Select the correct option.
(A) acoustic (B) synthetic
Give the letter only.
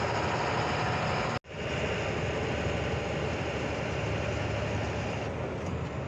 A